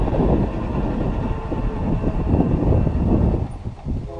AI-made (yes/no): no